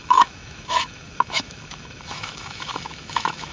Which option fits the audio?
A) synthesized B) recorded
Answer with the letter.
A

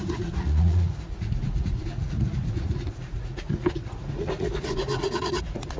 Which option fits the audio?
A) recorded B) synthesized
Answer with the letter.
B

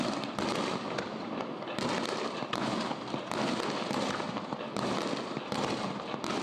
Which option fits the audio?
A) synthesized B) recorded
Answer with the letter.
B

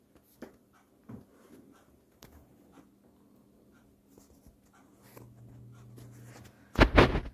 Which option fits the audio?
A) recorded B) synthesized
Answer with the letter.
A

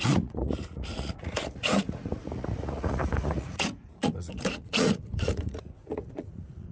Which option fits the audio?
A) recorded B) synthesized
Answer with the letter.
B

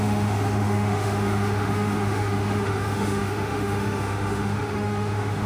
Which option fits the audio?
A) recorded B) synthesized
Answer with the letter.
B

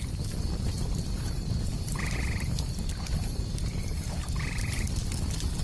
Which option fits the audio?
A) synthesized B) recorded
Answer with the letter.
B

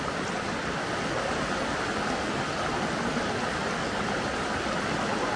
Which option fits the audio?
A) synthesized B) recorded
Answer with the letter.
B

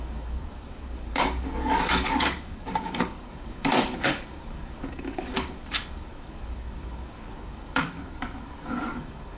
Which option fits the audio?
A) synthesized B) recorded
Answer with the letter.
A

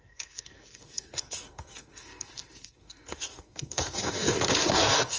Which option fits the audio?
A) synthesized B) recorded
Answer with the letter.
A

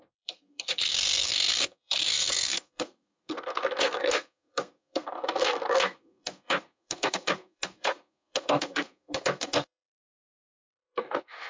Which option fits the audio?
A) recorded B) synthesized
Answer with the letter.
B